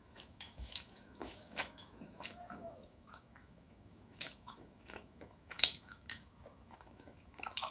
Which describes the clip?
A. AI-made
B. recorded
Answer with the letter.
A